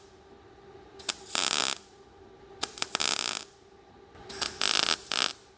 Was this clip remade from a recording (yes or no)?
no